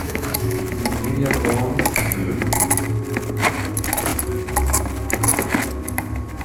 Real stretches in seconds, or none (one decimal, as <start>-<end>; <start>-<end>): 0.6-6.4